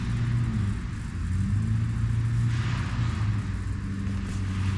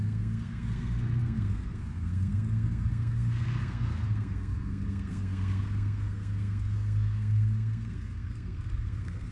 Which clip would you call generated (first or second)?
second